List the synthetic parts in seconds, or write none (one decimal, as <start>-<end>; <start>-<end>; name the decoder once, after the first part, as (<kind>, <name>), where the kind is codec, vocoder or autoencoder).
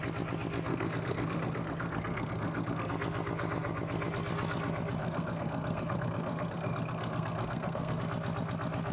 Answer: 0.7-2.9 (codec, SNAC); 5.0-8.0